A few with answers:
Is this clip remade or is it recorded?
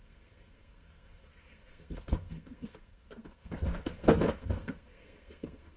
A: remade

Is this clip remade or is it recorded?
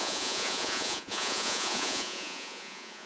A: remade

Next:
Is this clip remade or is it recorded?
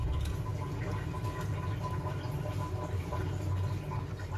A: recorded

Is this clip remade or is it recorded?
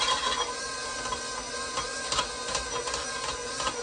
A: recorded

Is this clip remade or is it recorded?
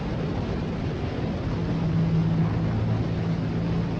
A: recorded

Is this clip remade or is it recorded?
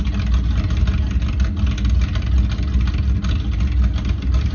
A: recorded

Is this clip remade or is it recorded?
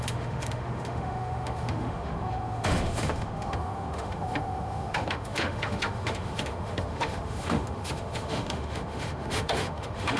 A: remade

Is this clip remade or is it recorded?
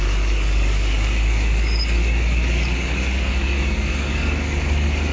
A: remade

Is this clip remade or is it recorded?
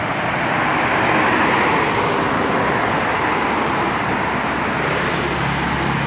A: recorded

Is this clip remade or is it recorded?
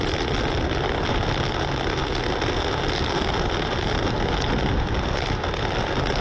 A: recorded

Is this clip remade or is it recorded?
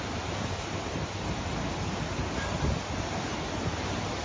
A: recorded